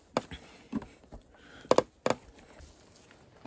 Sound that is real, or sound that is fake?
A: real